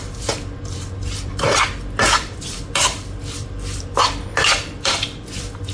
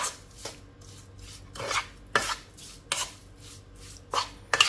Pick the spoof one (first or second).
first